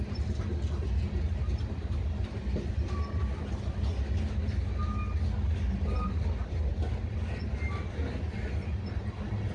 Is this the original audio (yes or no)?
yes